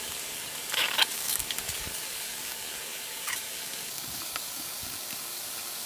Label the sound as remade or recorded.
remade